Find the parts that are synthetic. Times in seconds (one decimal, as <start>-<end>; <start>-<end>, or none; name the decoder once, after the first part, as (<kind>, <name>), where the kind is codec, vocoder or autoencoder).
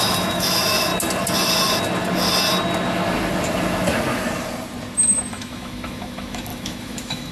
0.0-0.9 (autoencoder, DAC-VAE); 5.3-7.3